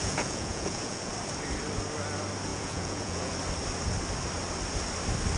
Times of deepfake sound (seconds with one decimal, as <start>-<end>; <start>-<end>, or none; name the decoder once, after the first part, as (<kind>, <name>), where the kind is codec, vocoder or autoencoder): 0.0-1.1 (vocoder, Vocos); 2.5-3.3